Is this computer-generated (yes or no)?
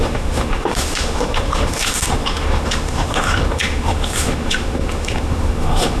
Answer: yes